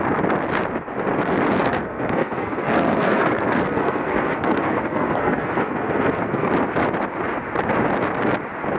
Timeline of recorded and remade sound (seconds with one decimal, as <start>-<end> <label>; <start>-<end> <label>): 0.0-1.6 recorded; 1.6-6.5 remade; 6.5-8.8 recorded